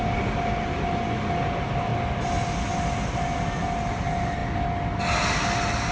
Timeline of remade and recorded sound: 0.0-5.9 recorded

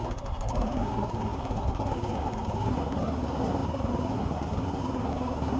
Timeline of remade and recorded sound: 0.0-5.6 remade

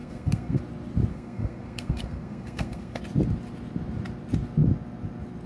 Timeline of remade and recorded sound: 0.0-0.6 remade; 0.6-1.1 recorded; 1.1-3.0 remade; 3.0-5.5 recorded

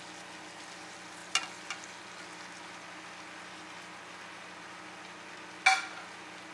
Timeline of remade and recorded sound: 0.0-6.5 recorded

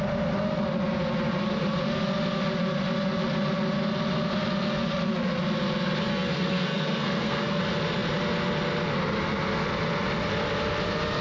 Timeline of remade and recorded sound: 0.0-6.1 recorded; 6.1-7.6 remade; 7.6-11.2 recorded